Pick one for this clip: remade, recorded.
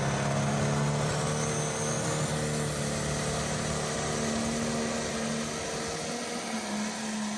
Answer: recorded